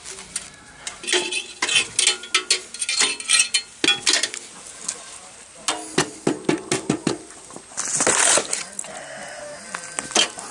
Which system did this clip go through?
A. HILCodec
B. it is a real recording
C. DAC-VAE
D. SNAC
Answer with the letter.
B